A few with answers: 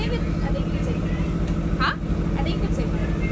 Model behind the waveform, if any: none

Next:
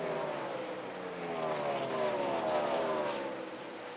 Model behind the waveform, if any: none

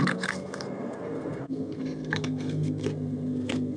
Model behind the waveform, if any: codec, SNAC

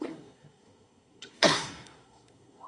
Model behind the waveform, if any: codec, SNAC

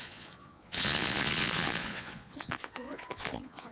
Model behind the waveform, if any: vocoder, Vocos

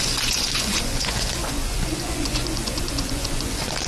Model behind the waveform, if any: vocoder, Vocos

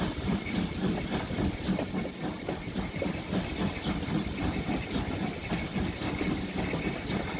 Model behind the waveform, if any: none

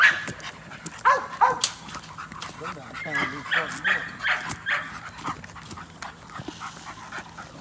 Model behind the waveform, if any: none